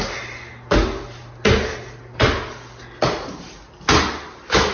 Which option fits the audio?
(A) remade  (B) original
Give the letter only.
B